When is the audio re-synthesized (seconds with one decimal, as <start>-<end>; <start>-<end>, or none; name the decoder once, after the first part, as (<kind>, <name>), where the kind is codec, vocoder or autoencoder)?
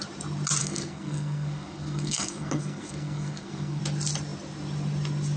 0.6-3.8 (codec, SNAC)